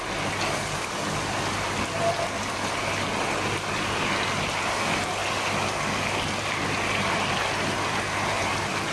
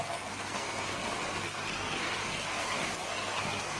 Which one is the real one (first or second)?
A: first